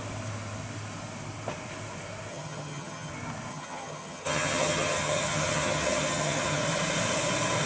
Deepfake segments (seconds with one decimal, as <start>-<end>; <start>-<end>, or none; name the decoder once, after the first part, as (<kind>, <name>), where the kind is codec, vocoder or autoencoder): 2.3-3.1 (vocoder, HiFi-GAN); 3.5-6.6